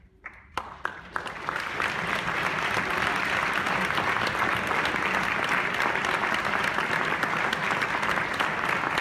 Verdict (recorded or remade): recorded